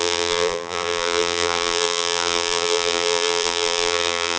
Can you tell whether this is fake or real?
fake